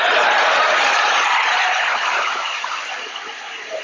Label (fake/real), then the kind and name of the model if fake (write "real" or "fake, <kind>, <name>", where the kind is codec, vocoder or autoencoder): fake, vocoder, BigVGAN v2